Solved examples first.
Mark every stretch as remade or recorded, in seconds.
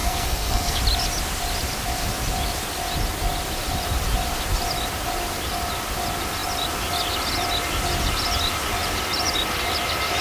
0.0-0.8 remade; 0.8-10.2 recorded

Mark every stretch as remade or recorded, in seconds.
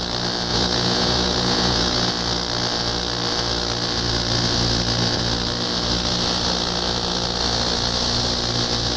0.0-0.5 recorded; 0.5-2.1 remade; 2.1-9.0 recorded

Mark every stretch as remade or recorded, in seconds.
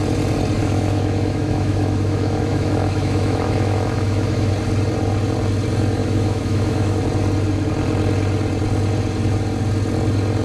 0.0-0.6 recorded; 0.6-4.5 remade; 4.5-6.0 recorded; 6.0-7.0 remade; 7.0-10.4 recorded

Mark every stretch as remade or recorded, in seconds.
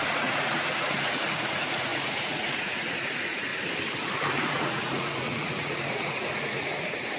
0.0-3.5 remade; 3.5-4.5 recorded; 4.5-7.2 remade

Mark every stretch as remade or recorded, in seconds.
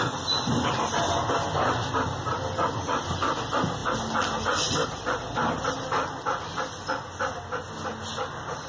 0.0-8.7 recorded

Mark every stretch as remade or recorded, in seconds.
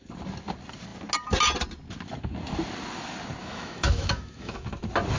0.0-3.4 recorded; 3.4-4.7 remade; 4.7-5.2 recorded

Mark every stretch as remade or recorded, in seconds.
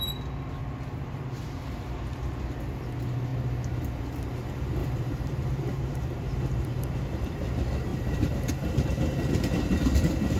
0.0-0.6 recorded; 0.6-2.4 remade; 2.4-4.8 recorded; 4.8-7.2 remade; 7.2-7.9 recorded; 7.9-8.5 remade; 8.5-10.4 recorded